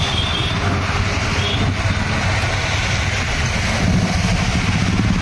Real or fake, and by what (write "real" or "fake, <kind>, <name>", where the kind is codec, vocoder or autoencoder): real